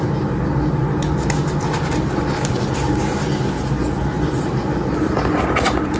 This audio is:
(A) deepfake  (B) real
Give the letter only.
B